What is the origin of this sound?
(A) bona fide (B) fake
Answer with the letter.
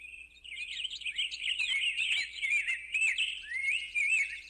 A